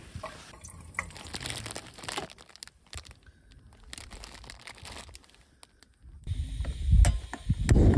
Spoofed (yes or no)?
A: no